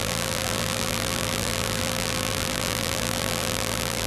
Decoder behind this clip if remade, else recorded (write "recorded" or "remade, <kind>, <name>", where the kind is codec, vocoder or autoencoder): remade, vocoder, BigVGAN v2